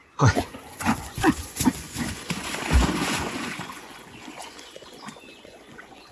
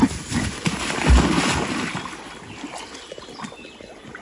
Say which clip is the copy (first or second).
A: first